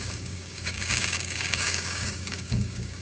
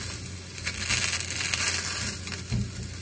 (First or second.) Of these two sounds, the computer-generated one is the first